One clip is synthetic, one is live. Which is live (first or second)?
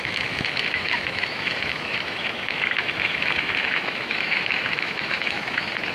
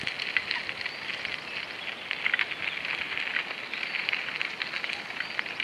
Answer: second